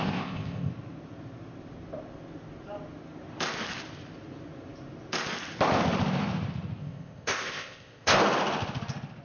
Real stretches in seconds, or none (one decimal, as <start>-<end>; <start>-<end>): 0.7-6.8; 8.2-9.2